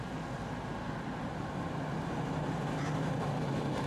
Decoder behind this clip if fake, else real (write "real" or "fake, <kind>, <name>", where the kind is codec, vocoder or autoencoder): real